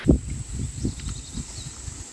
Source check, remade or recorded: recorded